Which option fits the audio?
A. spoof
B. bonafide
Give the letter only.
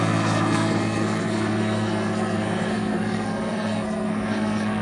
A